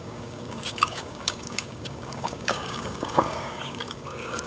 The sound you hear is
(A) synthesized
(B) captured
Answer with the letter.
A